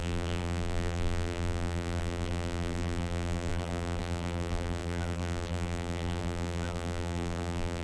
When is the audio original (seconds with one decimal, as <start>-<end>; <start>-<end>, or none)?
none